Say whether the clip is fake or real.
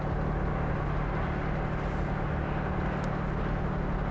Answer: real